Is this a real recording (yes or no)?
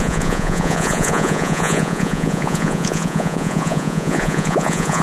no